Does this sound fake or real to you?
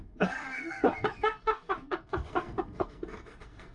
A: fake